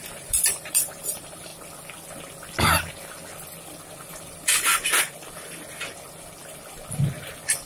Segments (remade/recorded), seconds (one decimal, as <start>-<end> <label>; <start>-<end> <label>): 0.0-1.5 remade; 1.5-4.1 recorded; 4.1-4.7 remade; 4.7-7.7 recorded

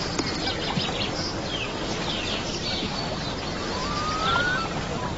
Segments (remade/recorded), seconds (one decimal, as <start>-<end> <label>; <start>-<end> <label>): 0.0-5.2 recorded

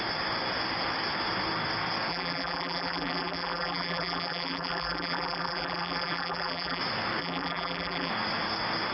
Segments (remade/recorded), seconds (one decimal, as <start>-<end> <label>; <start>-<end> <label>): 0.0-2.1 recorded; 2.1-6.8 remade; 6.8-7.2 recorded; 7.2-8.1 remade; 8.1-8.9 recorded

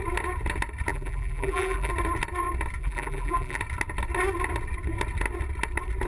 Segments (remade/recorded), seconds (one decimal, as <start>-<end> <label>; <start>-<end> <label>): 0.0-0.9 recorded; 0.9-1.9 remade; 1.9-2.8 recorded; 2.8-3.6 remade; 3.6-6.1 recorded

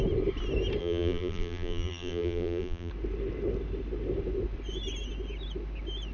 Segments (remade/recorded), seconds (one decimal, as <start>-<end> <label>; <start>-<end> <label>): 0.0-0.8 recorded; 0.8-2.9 remade; 2.9-6.1 recorded

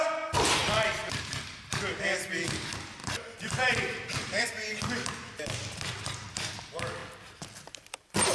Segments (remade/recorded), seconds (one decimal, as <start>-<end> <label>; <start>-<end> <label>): 0.0-0.6 remade; 0.6-1.2 recorded; 1.2-7.0 remade; 7.0-7.8 recorded; 7.8-8.3 remade

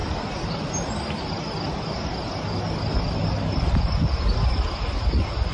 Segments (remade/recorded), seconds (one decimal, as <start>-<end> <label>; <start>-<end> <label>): 0.0-5.5 recorded